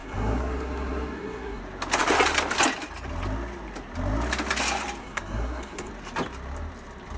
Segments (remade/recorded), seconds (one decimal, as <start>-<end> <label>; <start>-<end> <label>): 0.0-1.6 remade; 1.6-5.0 recorded; 5.0-5.9 remade; 5.9-7.2 recorded